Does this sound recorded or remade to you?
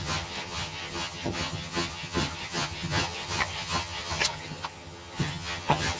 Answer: remade